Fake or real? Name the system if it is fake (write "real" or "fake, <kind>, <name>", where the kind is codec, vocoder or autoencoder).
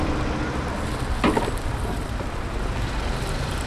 fake, vocoder, BigVGAN v2